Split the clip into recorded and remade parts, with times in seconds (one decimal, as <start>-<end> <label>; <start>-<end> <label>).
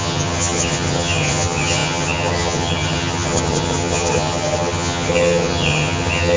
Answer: 0.0-6.4 remade